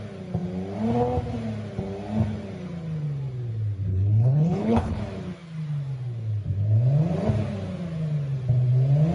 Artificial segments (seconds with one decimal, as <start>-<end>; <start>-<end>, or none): 3.9-5.0